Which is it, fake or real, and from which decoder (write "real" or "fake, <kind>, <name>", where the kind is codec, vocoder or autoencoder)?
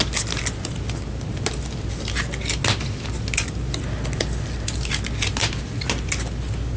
real